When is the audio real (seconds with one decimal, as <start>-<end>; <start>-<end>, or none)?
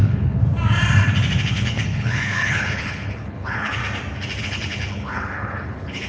0.4-1.4; 3.8-4.4